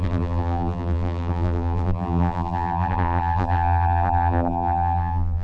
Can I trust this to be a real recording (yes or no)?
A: no